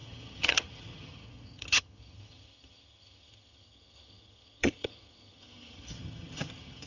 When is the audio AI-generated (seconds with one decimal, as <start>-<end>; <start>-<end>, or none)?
0.0-6.9